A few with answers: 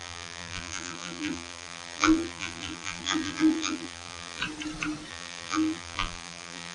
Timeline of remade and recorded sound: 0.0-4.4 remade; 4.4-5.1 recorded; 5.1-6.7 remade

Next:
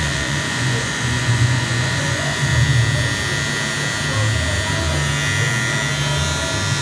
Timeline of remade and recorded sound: 0.0-2.5 remade; 2.5-6.8 recorded

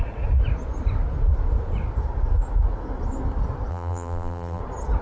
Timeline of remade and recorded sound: 0.0-3.7 recorded; 3.7-4.6 remade; 4.6-5.0 recorded